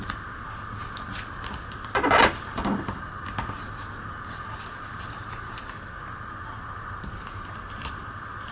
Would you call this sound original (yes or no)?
yes